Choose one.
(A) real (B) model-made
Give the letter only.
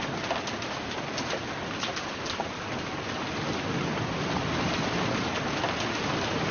A